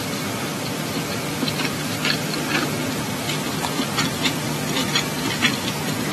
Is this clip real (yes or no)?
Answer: yes